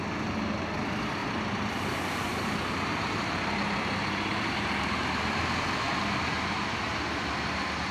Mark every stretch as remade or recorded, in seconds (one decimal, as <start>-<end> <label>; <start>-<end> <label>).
0.0-1.2 recorded; 1.2-5.4 remade; 5.4-7.9 recorded